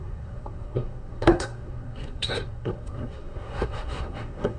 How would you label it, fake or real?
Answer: fake